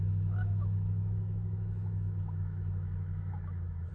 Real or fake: fake